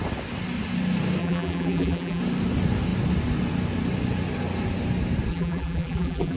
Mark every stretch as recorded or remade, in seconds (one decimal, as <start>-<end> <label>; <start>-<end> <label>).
0.0-1.2 recorded; 1.2-2.2 remade; 2.2-5.3 recorded; 5.3-6.4 remade